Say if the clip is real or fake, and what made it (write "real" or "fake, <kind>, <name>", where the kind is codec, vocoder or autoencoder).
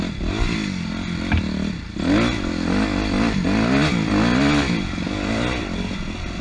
real